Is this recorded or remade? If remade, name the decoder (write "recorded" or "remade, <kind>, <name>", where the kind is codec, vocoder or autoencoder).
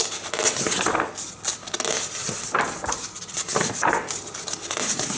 recorded